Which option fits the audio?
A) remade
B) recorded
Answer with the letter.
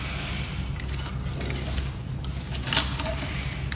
B